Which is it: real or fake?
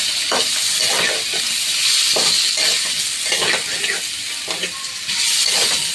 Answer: real